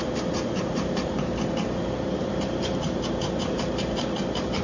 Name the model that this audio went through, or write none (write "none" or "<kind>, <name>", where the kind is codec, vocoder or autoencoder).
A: vocoder, BigVGAN v2